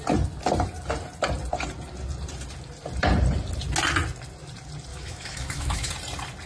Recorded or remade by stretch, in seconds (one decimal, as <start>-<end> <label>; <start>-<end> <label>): 0.0-4.9 recorded; 4.9-5.9 remade; 5.9-6.5 recorded